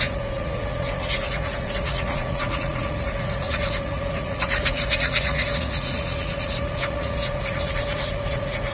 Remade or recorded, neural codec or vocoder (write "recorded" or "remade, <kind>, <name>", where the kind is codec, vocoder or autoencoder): remade, vocoder, Vocos